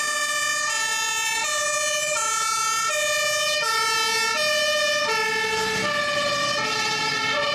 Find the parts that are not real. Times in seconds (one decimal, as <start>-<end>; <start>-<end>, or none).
none